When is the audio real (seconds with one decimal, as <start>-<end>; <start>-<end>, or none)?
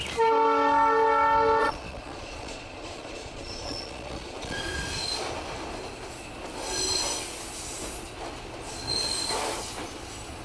0.0-1.6; 4.6-10.4